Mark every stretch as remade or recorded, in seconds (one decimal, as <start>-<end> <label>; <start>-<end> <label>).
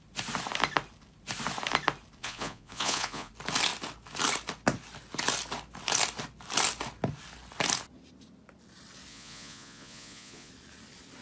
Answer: 0.0-2.2 recorded; 2.2-3.3 remade; 3.3-9.1 recorded; 9.1-10.5 remade; 10.5-11.2 recorded